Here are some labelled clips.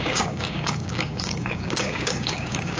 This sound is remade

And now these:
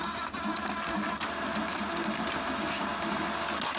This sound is recorded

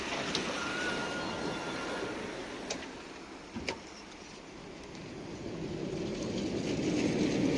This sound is recorded